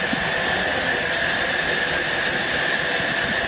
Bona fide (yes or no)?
no